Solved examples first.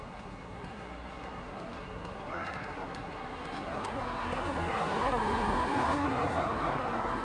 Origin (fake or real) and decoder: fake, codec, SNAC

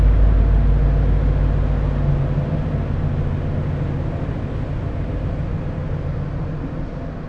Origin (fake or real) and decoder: real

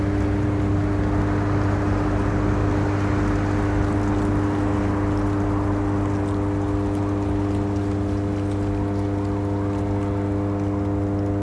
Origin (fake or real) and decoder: real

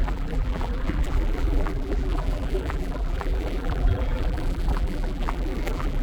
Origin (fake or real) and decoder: fake, vocoder, BigVGAN v2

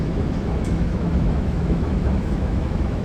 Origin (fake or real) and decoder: fake, autoencoder, DAC-VAE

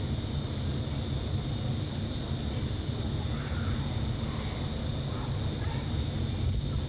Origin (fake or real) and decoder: real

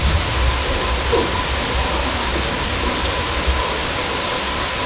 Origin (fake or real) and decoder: real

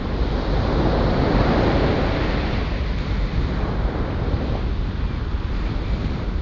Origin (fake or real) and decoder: real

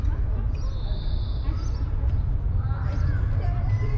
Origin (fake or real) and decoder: real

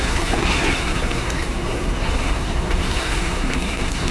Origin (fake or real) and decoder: fake, codec, SNAC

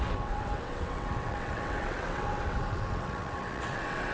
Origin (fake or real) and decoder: fake, vocoder, WaveNeXt